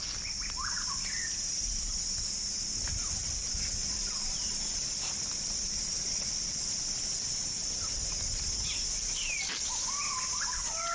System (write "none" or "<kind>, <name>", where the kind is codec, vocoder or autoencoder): none